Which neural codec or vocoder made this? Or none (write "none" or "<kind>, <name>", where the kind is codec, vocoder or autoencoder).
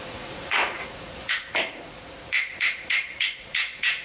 vocoder, Vocos